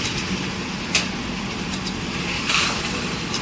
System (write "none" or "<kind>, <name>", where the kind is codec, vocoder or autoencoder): vocoder, BigVGAN v2